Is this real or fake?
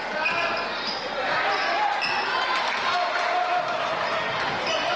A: real